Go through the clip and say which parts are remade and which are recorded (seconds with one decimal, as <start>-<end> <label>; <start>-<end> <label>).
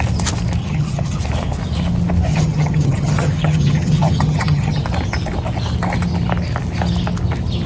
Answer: 0.0-0.6 recorded; 0.6-1.2 remade; 1.2-2.3 recorded; 2.3-4.8 remade; 4.8-7.7 recorded